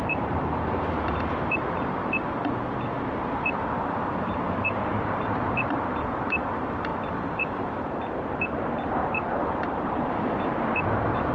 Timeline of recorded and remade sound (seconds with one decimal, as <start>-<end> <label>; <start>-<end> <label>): 0.0-11.3 remade